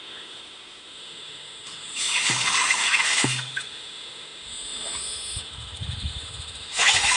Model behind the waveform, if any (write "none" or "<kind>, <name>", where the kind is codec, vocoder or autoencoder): autoencoder, DAC-VAE